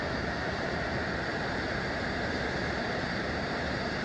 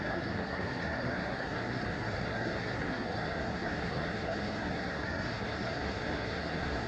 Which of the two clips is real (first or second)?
first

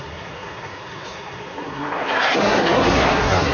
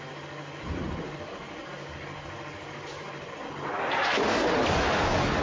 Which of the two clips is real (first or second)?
second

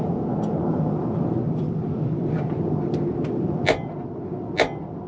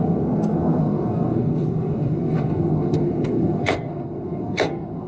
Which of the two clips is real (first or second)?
first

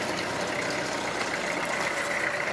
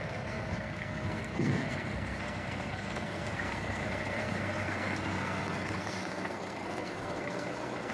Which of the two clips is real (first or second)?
first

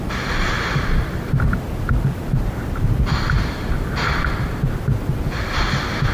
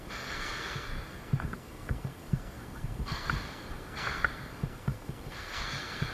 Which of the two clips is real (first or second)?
first